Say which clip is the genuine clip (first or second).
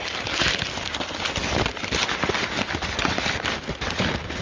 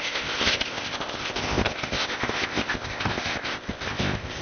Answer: first